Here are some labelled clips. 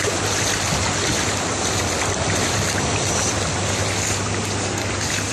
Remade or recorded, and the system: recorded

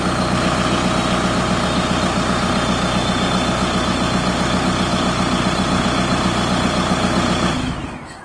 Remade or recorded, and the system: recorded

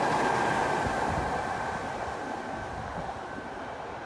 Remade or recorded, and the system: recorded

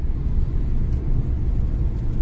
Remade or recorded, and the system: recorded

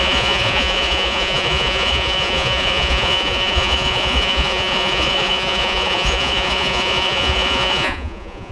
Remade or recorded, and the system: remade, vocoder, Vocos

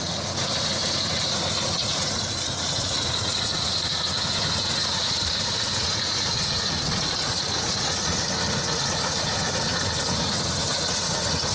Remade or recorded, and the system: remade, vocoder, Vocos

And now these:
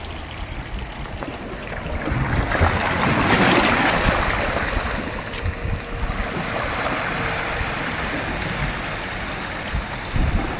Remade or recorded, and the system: recorded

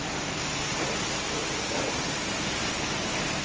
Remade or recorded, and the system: recorded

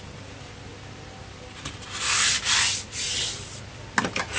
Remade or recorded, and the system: recorded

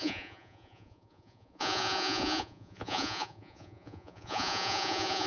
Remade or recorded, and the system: remade, vocoder, Vocos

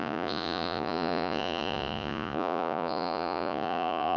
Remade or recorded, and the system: remade, vocoder, Vocos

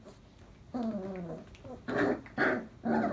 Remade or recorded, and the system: recorded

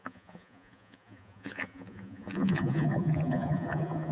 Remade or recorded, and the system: remade, vocoder, Vocos